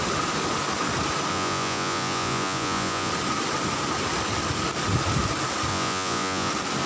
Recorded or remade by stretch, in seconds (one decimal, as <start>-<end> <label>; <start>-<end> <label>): 0.0-1.3 recorded; 1.3-3.1 remade; 3.1-5.7 recorded; 5.7-6.5 remade; 6.5-6.9 recorded

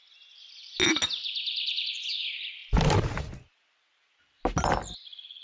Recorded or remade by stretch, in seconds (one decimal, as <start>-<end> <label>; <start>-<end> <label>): 0.0-5.4 recorded

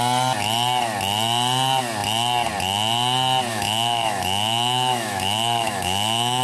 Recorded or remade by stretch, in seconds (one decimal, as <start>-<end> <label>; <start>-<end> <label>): 0.0-3.5 recorded; 3.5-6.4 remade